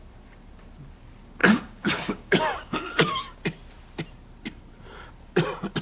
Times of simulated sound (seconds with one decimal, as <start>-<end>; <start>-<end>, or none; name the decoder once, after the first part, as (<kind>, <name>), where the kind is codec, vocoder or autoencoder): 1.4-3.4 (codec, DAC)